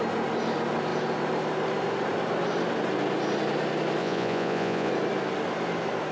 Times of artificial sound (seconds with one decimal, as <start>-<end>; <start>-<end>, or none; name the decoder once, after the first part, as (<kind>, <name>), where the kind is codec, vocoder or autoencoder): 4.0-4.9 (vocoder, Vocos)